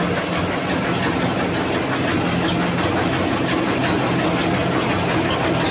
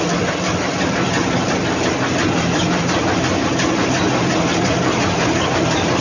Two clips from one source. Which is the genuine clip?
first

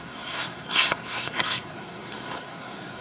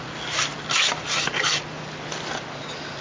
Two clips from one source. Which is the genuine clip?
second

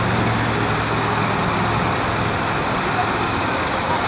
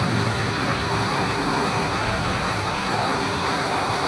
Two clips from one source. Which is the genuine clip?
first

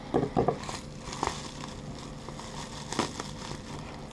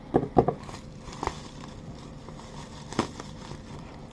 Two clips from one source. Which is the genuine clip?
first